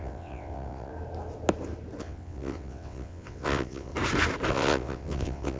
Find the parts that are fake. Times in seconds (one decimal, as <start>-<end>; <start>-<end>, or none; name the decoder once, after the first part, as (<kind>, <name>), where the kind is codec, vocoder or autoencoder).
0.0-0.9 (vocoder, WaveNeXt); 2.0-3.9; 4.5-5.6